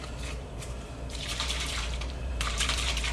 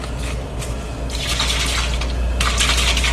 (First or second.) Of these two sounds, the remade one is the first